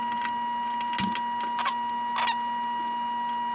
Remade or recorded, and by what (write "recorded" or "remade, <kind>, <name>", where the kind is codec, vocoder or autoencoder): recorded